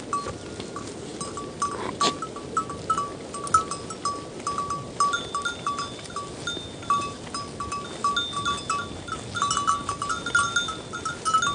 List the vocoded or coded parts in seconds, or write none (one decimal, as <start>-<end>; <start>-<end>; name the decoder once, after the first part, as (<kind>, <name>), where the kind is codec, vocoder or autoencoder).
none